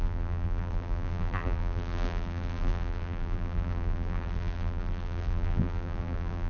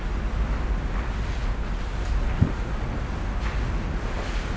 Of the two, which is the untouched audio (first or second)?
second